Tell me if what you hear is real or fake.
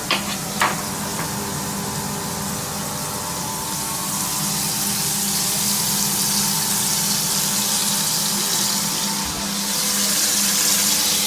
real